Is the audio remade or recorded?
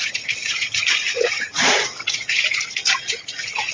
remade